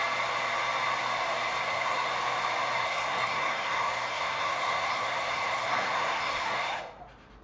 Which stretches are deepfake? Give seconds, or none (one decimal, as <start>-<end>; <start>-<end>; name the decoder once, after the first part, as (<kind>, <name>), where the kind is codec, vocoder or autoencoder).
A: 1.6-2.1 (codec, SNAC); 2.8-6.8